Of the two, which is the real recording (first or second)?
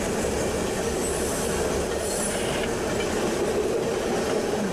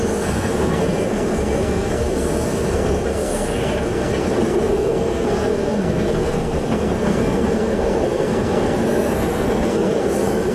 first